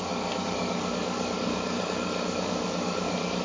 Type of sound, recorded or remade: remade